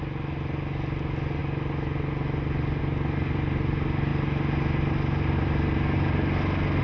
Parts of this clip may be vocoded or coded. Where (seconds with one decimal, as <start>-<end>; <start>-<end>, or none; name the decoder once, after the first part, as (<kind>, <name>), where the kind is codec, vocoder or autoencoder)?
none